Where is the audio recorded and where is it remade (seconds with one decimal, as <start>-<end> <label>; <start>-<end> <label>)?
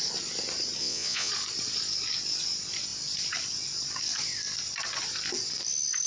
0.0-0.8 recorded; 0.8-1.3 remade; 1.3-6.1 recorded